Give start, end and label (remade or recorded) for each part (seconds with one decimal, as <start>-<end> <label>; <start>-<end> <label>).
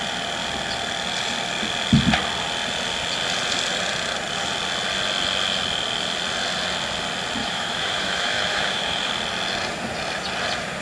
0.0-7.4 recorded; 7.4-9.1 remade; 9.1-10.8 recorded